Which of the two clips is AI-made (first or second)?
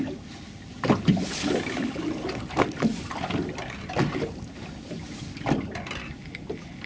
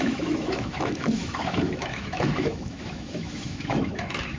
second